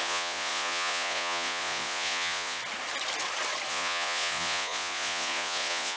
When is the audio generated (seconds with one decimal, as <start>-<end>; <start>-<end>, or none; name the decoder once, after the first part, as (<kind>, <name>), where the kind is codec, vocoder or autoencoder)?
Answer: 0.0-2.6 (vocoder, Vocos); 3.7-6.0